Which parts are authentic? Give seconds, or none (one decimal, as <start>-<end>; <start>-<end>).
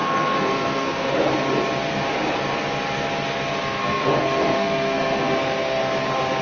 1.1-3.6; 5.8-6.4